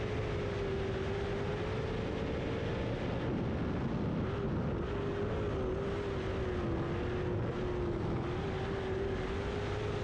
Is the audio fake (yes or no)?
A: no